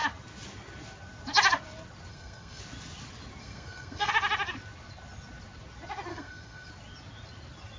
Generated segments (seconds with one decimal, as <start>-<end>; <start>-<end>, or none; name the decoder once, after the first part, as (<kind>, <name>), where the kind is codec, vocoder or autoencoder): 2.1-2.6 (codec, SNAC); 3.4-4.1; 6.1-6.7